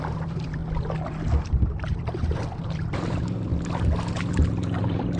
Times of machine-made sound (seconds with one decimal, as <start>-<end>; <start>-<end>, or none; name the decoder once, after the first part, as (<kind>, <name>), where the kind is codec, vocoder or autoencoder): 0.0-0.6 (vocoder, BigVGAN v2); 1.4-3.5; 4.1-5.2

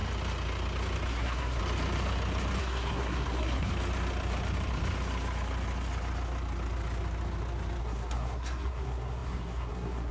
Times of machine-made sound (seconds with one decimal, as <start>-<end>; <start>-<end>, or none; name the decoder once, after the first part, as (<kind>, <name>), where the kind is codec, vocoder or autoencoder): 1.1-1.6 (codec, SNAC); 2.6-3.7; 7.8-10.1